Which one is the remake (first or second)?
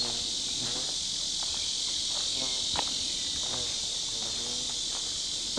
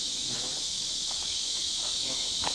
second